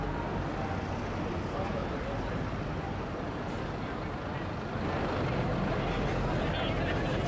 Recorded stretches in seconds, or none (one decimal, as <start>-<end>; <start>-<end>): 0.0-7.3